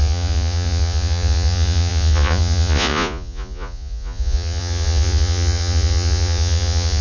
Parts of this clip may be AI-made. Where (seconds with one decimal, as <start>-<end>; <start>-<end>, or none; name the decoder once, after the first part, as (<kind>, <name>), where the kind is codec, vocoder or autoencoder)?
0.0-7.0 (vocoder, Vocos)